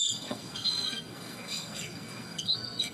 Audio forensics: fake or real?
fake